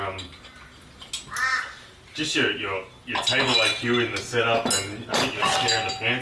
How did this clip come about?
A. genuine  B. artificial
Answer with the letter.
A